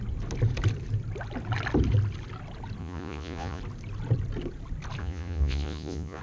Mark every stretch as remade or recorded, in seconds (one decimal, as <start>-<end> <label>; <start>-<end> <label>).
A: 0.0-2.8 recorded; 2.8-3.6 remade; 3.6-5.0 recorded; 5.0-6.2 remade